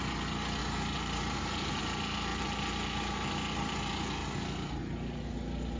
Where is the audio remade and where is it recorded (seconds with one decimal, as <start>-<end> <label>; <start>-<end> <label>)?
0.0-0.6 recorded; 0.6-1.8 remade; 1.8-5.8 recorded